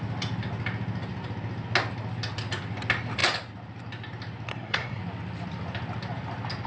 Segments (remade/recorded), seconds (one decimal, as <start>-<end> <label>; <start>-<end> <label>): 0.0-4.5 recorded; 4.5-5.0 remade; 5.0-6.7 recorded